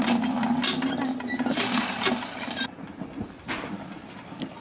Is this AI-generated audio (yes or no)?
no